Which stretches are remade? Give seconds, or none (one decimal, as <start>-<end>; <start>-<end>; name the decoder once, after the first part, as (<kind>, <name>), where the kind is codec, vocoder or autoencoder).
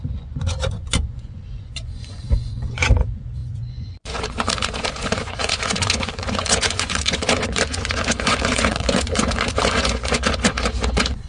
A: 0.0-11.3 (vocoder, Vocos)